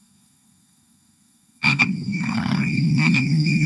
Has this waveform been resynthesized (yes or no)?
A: yes